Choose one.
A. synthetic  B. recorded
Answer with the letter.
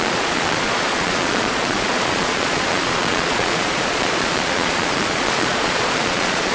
A